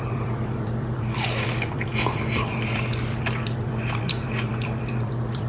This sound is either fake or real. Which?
fake